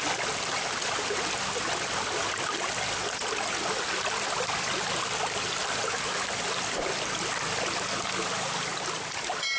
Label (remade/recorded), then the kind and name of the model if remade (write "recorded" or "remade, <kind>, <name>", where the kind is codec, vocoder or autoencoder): recorded